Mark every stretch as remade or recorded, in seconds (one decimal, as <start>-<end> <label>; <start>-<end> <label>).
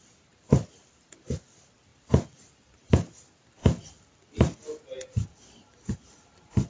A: 0.0-6.7 recorded